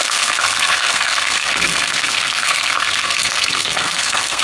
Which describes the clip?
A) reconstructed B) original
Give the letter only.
A